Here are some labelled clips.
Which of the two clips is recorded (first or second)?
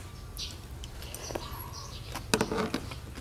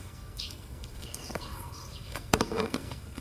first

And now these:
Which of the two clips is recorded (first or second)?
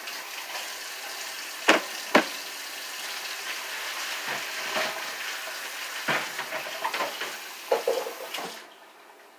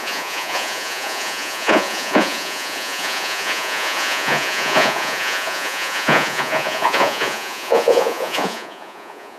first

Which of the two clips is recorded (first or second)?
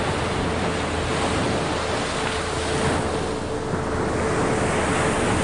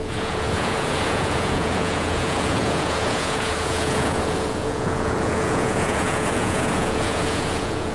first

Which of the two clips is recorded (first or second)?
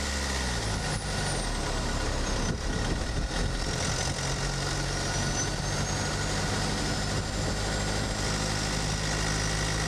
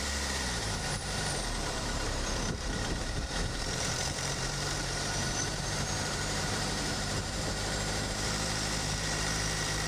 first